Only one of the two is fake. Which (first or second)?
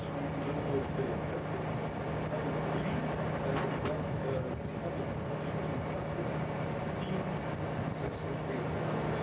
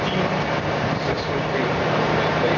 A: second